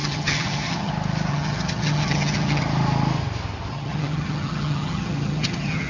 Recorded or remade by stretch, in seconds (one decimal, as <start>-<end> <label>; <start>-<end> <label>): 0.0-0.9 remade; 0.9-1.3 recorded; 1.3-2.6 remade; 2.6-3.7 recorded; 3.7-5.9 remade